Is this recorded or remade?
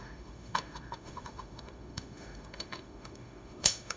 remade